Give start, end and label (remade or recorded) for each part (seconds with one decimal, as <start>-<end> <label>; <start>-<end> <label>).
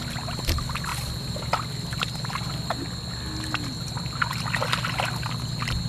0.0-5.9 recorded